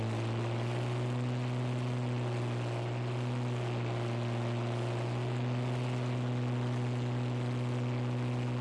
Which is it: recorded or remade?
recorded